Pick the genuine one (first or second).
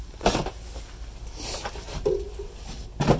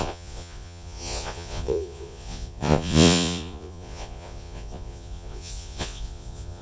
first